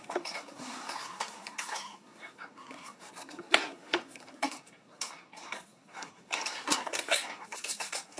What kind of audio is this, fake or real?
fake